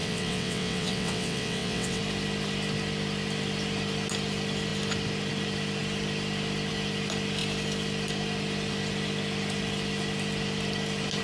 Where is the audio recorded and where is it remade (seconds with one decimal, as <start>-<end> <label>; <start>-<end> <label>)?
0.0-2.0 remade; 2.0-11.2 recorded